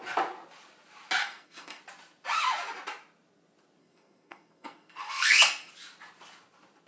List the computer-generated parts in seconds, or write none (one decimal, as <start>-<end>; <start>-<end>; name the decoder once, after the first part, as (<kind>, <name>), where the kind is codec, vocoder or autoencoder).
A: 1.2-1.8 (codec, SNAC); 3.8-5.7